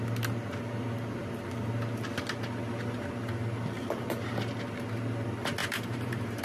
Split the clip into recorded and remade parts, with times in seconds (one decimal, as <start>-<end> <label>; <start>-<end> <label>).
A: 0.0-5.6 recorded; 5.6-6.4 remade